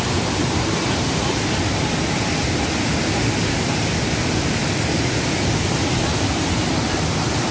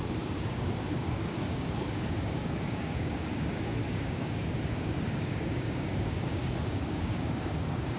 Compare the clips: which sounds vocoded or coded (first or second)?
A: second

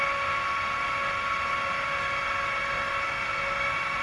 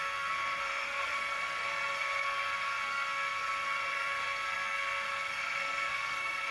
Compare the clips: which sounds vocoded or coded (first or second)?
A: second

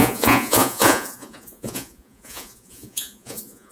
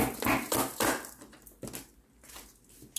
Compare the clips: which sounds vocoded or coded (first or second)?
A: first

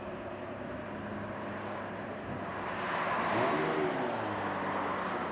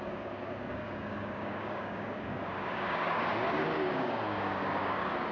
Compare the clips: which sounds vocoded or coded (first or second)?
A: second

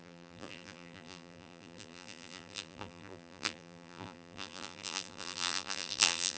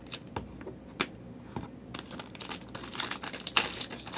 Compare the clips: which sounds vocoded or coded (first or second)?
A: first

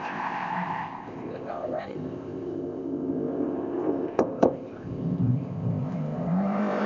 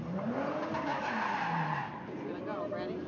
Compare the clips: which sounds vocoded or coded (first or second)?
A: first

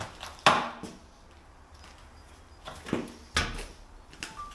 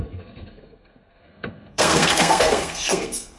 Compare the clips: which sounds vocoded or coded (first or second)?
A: second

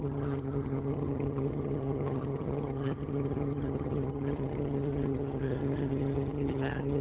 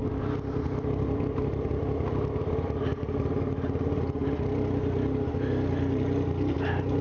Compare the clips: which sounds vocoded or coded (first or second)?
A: first